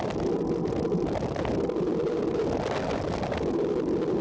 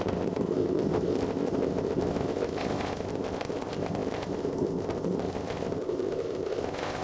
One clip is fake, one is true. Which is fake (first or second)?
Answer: second